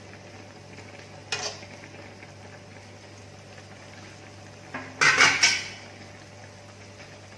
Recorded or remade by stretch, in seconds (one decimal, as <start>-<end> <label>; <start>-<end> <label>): 0.0-7.4 recorded